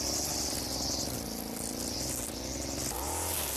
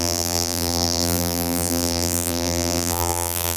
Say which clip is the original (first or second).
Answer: first